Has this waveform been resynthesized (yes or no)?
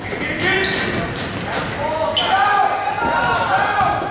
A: no